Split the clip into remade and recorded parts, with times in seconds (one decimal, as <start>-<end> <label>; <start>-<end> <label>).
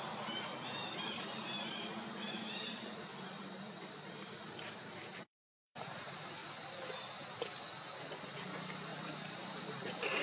0.0-6.4 remade; 6.4-8.0 recorded; 8.0-10.2 remade